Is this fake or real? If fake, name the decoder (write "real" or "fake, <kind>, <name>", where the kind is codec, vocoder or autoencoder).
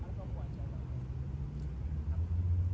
real